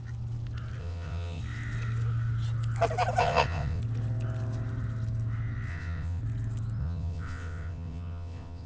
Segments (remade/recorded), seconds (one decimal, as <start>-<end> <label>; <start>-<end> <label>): 0.0-0.8 recorded; 0.8-1.4 remade; 1.4-3.2 recorded; 3.2-3.8 remade; 3.8-5.7 recorded; 5.7-6.2 remade; 6.2-6.8 recorded; 6.8-8.7 remade